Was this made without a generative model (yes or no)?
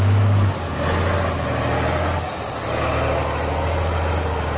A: yes